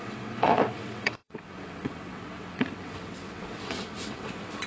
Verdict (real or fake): fake